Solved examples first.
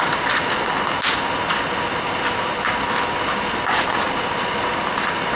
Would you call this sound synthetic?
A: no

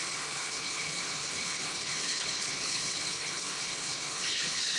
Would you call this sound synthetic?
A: yes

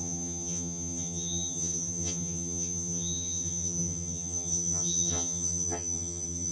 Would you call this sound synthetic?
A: yes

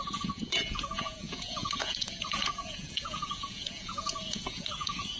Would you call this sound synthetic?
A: yes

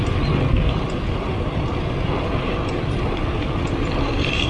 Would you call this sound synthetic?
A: no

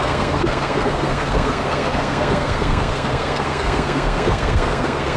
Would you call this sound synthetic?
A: yes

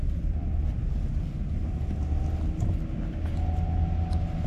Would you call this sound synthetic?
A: no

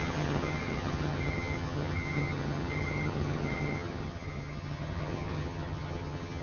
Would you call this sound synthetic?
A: yes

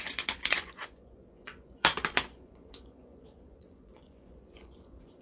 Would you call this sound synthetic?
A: yes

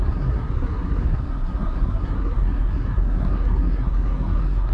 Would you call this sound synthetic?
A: yes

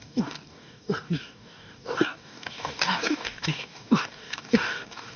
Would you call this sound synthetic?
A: yes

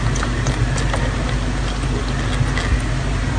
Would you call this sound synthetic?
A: no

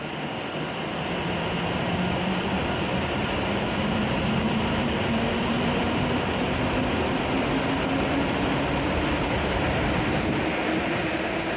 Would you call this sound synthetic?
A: no